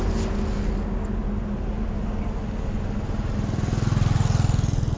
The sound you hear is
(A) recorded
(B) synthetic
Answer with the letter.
A